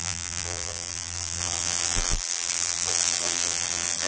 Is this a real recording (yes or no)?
no